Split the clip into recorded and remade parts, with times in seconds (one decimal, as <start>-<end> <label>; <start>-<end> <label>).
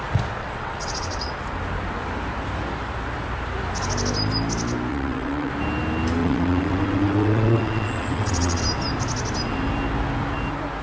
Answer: 0.0-0.4 recorded; 0.4-1.3 remade; 1.3-4.9 recorded; 4.9-5.5 remade; 5.5-6.2 recorded; 6.2-8.6 remade; 8.6-10.8 recorded